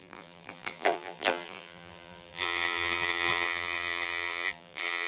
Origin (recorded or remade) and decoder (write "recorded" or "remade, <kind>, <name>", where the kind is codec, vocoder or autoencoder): remade, vocoder, BigVGAN v2